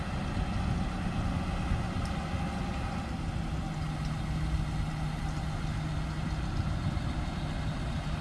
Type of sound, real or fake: real